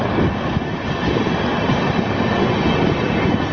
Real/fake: real